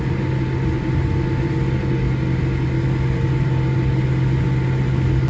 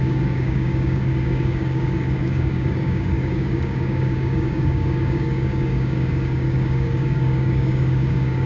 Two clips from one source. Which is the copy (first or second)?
second